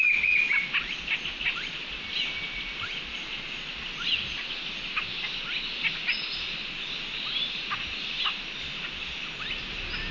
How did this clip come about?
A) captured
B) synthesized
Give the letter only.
A